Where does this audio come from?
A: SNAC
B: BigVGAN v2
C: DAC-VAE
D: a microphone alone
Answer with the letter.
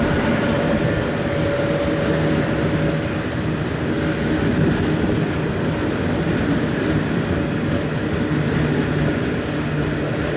D